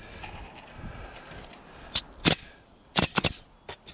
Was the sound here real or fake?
real